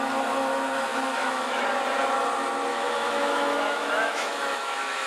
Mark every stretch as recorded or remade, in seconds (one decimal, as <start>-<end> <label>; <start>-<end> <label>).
0.0-0.9 recorded; 0.9-1.6 remade; 1.6-2.7 recorded; 2.7-5.1 remade